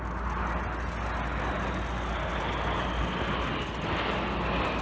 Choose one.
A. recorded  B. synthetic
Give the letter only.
A